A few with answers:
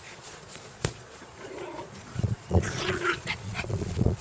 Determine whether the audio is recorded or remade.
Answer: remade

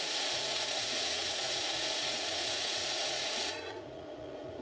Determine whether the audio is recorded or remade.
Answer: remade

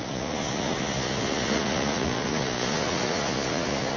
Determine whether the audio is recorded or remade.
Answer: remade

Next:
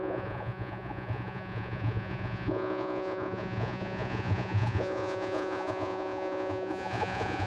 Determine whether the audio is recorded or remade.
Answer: remade